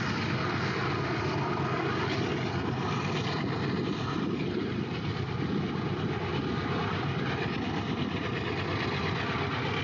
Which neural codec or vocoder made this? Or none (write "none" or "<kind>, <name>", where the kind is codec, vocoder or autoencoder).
none